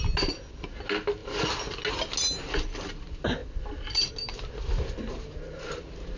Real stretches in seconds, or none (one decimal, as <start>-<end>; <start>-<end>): 0.0-6.2